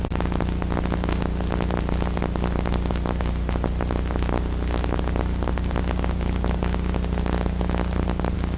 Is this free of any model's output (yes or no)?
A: yes